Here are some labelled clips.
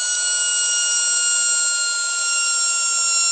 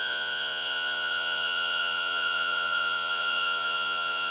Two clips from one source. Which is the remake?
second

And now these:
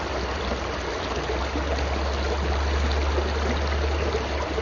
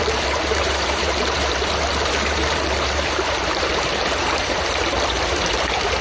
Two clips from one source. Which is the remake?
second